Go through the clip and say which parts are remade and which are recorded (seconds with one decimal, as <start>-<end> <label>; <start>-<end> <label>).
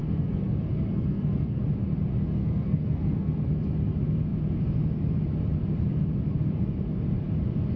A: 0.0-1.6 remade; 1.6-2.4 recorded; 2.4-3.5 remade; 3.5-7.8 recorded